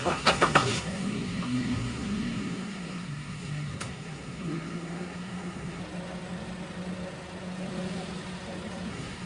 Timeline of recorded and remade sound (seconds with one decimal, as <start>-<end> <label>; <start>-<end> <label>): 0.0-5.8 remade; 5.8-8.9 recorded; 8.9-9.3 remade